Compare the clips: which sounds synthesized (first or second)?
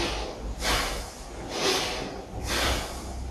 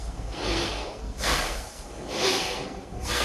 second